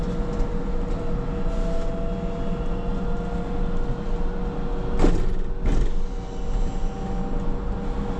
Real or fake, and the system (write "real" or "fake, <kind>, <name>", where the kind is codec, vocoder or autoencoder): real